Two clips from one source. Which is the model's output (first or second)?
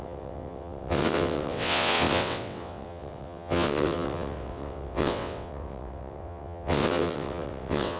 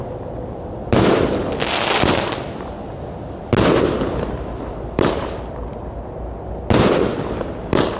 first